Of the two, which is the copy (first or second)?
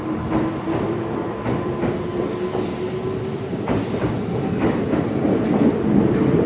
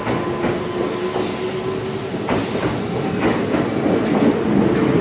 first